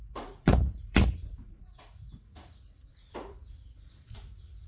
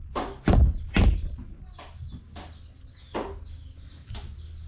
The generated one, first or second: first